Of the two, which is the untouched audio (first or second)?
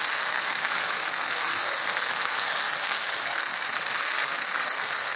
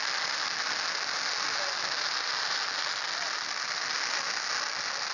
second